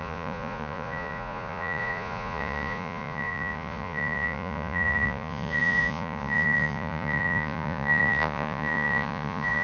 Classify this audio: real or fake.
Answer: fake